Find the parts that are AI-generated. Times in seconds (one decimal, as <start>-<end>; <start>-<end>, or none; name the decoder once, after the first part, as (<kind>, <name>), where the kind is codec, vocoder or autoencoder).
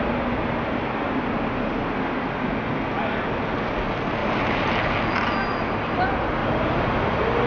4.2-4.7 (vocoder, BigVGAN v2); 6.4-7.1